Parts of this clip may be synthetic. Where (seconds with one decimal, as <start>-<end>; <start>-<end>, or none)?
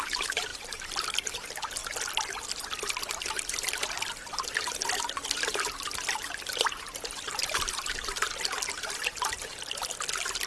0.5-1.3; 7.4-7.9